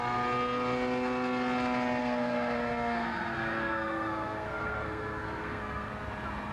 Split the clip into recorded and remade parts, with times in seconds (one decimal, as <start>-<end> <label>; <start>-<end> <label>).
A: 0.0-2.0 recorded; 2.0-5.9 remade; 5.9-6.5 recorded